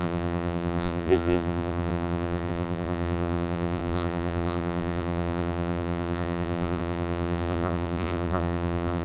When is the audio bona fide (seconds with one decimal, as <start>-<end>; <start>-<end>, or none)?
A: none